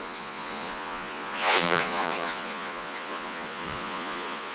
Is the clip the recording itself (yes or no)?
no